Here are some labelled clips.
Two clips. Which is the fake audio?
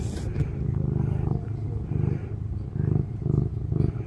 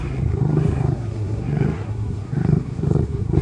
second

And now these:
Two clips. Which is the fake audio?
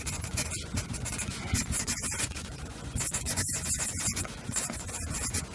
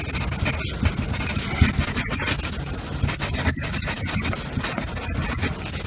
first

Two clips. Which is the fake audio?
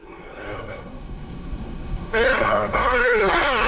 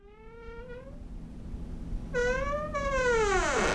first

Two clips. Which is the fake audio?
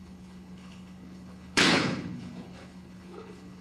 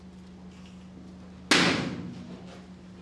first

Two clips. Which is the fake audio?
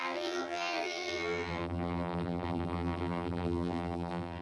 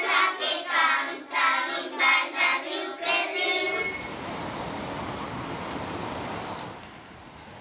first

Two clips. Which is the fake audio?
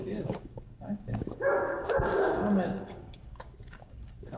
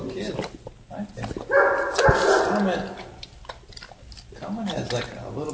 first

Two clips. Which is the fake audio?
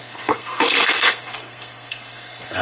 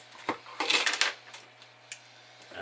first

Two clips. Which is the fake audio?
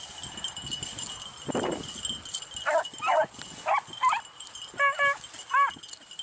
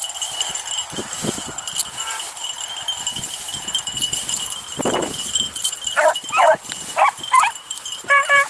second